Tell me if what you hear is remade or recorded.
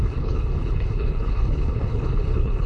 remade